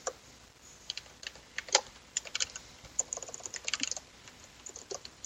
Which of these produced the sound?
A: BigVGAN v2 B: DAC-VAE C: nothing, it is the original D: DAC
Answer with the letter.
A